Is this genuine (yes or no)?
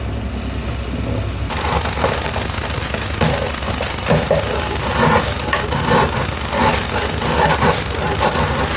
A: yes